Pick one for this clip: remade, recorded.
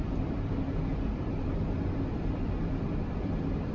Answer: remade